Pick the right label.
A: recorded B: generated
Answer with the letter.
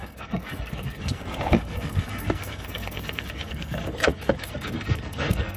B